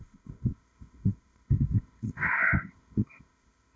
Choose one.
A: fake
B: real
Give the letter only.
A